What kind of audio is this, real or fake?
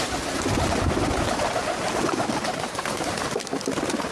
real